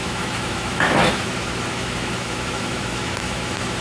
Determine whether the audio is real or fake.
fake